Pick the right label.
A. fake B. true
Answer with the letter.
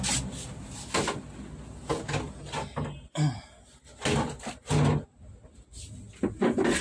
B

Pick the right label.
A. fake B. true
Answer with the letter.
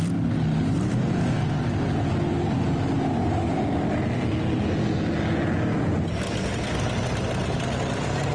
B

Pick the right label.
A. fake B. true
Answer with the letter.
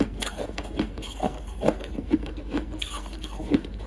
A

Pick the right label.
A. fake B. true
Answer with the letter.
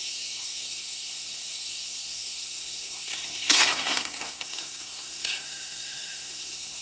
A